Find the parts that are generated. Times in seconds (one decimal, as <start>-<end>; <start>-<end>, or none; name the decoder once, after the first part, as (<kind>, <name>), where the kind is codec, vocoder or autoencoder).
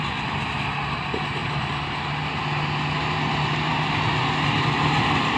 1.4-4.6 (vocoder, BigVGAN v2)